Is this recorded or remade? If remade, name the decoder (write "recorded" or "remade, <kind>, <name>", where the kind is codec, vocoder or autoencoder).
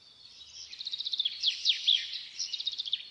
recorded